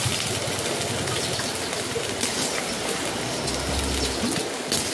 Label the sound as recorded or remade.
recorded